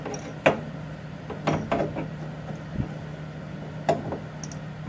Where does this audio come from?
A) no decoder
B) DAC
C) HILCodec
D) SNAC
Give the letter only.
A